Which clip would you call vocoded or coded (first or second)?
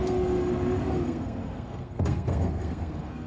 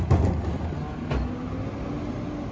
first